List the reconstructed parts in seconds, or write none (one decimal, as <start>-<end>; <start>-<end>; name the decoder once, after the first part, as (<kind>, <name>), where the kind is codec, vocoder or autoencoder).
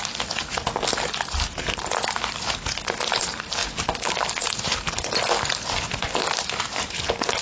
none